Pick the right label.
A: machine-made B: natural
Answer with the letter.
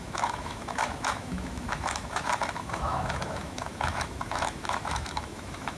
A